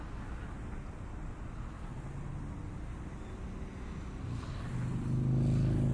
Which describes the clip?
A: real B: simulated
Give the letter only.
A